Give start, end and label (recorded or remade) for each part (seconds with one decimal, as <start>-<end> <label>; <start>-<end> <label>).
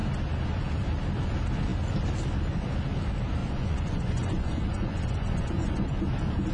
0.0-3.4 recorded; 3.4-6.0 remade; 6.0-6.5 recorded